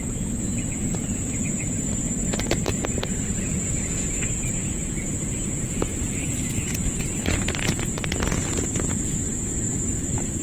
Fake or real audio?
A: fake